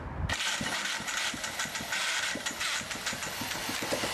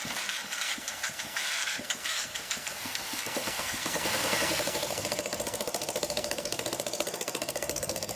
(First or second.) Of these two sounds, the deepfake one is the second